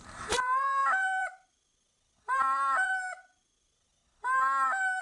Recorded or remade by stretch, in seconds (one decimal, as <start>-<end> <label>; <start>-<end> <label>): 0.0-4.0 remade; 4.0-5.0 recorded

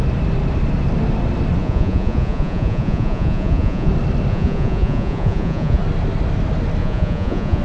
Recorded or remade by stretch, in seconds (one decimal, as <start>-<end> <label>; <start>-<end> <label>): 0.0-1.6 recorded; 1.6-3.9 remade; 3.9-4.3 recorded; 4.3-5.8 remade; 5.8-6.8 recorded; 6.8-7.6 remade

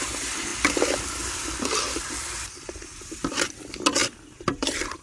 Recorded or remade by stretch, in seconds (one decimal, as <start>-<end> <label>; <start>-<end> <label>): 0.0-5.0 recorded

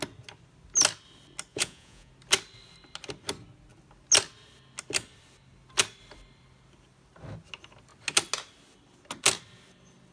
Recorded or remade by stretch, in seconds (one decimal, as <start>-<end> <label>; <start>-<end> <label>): 0.0-1.5 recorded; 1.5-2.1 remade; 2.1-10.1 recorded

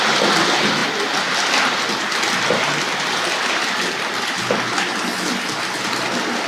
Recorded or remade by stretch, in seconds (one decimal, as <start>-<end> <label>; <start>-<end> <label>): 0.0-6.5 recorded